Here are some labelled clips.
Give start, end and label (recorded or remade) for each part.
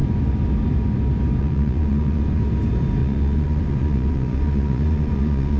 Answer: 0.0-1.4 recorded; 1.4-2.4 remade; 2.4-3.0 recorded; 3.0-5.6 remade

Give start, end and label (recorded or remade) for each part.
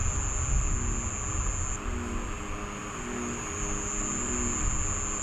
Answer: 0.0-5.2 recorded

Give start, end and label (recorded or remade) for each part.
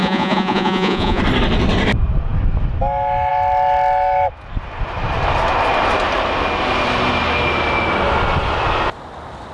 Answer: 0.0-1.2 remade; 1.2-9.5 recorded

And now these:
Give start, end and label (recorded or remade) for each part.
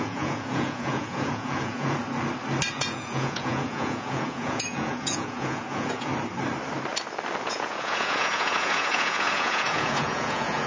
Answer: 0.0-2.0 remade; 2.0-2.7 recorded; 2.7-6.1 remade; 6.1-7.4 recorded; 7.4-10.7 remade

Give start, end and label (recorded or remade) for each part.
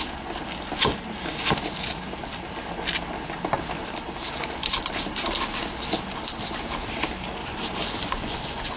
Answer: 0.0-7.4 recorded; 7.4-8.8 remade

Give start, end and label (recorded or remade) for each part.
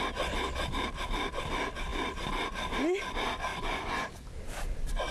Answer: 0.0-3.5 recorded; 3.5-4.1 remade; 4.1-5.1 recorded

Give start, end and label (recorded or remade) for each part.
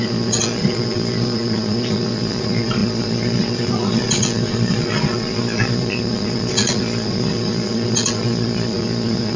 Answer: 0.0-9.4 remade